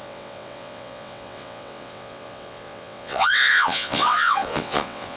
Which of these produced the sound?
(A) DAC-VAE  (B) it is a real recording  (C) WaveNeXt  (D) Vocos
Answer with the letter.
C